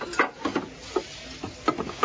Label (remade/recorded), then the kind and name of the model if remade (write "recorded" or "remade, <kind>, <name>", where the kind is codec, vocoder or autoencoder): recorded